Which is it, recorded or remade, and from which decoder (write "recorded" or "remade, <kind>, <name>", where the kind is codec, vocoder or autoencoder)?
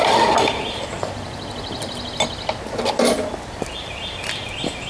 recorded